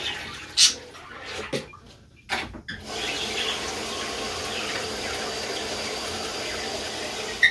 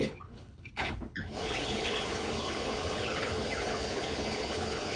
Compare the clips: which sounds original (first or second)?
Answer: first